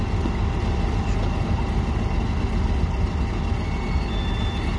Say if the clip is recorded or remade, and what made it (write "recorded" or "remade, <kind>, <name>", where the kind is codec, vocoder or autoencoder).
recorded